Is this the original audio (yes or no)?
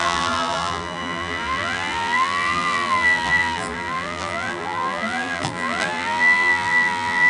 no